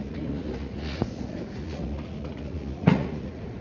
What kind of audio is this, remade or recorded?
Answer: remade